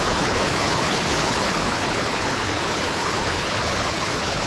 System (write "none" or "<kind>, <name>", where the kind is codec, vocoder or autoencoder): codec, HILCodec